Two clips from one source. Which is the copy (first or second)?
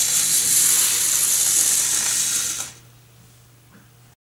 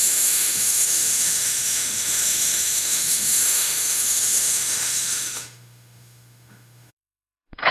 second